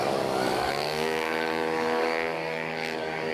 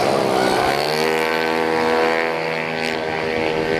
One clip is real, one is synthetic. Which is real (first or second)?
second